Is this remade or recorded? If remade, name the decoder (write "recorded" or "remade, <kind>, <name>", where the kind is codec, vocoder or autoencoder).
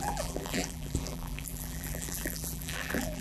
remade, vocoder, BigVGAN v2